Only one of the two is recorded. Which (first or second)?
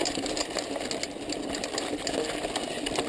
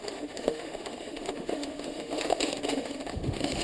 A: first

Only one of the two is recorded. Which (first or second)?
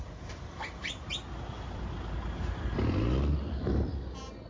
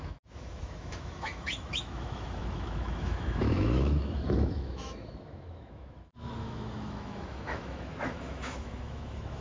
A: first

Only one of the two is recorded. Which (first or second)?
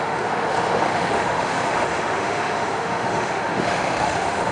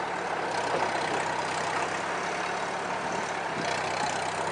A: second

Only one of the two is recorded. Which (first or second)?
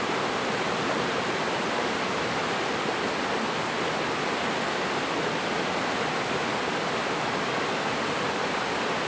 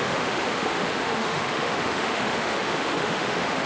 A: first